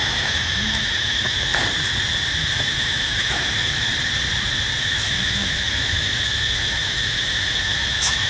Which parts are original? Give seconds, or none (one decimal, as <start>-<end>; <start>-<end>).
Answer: 1.5-2.4; 3.9-4.8